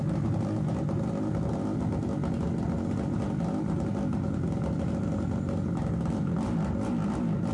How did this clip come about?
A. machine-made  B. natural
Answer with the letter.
B